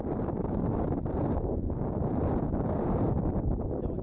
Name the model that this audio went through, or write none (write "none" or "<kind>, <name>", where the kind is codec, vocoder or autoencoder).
vocoder, BigVGAN v2